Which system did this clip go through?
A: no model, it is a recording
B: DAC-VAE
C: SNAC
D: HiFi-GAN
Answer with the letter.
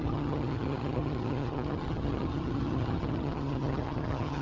D